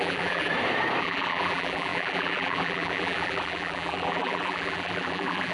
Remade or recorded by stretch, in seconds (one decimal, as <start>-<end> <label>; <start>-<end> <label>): 0.0-0.5 remade; 0.5-1.0 recorded; 1.0-5.5 remade